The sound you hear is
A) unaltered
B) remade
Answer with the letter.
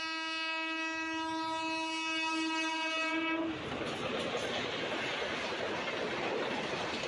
A